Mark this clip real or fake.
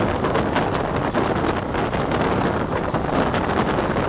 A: real